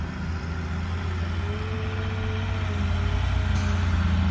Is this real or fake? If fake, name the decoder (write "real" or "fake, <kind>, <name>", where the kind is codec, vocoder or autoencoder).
real